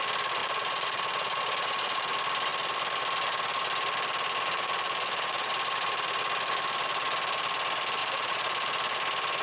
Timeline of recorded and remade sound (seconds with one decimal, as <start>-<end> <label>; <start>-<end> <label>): 0.0-0.4 recorded; 0.4-2.0 remade; 2.0-4.5 recorded; 4.5-5.5 remade; 5.5-8.0 recorded; 8.0-8.7 remade; 8.7-9.4 recorded